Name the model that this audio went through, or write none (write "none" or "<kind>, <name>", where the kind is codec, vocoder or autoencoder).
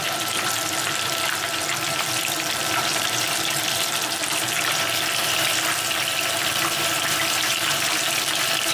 vocoder, BigVGAN v2